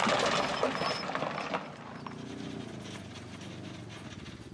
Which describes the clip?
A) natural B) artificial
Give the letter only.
A